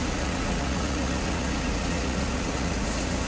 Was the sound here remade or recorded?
remade